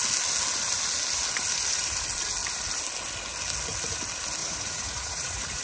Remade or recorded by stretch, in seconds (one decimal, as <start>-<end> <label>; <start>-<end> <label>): 0.0-4.4 recorded; 4.4-5.6 remade